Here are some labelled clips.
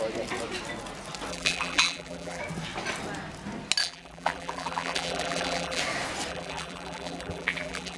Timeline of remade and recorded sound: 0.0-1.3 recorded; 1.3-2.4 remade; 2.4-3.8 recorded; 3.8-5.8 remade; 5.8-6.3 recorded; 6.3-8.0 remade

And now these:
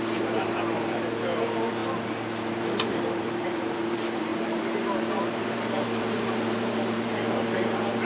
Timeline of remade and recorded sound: 0.0-1.8 remade; 1.8-2.5 recorded; 2.5-8.1 remade

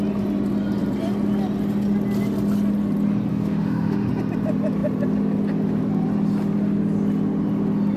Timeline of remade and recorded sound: 0.0-3.3 recorded; 3.3-4.1 remade; 4.1-8.0 recorded

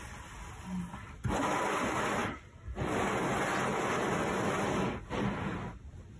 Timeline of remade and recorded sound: 0.0-6.2 recorded